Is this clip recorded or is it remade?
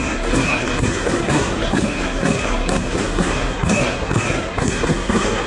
remade